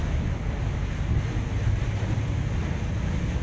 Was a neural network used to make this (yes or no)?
no